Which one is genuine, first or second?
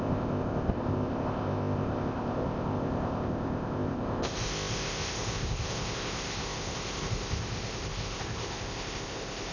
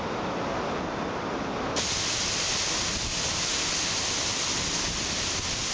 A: second